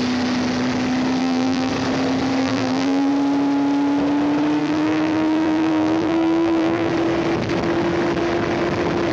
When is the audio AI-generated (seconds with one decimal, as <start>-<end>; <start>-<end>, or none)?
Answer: 1.2-1.7; 2.4-3.1; 4.6-6.9